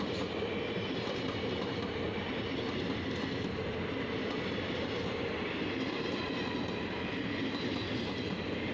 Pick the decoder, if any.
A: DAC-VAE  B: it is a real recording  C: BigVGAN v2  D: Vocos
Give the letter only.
B